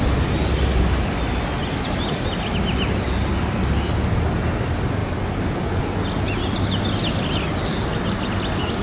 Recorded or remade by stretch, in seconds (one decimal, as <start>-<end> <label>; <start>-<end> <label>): 0.0-8.8 recorded